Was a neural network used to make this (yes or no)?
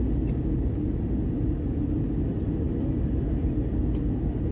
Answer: no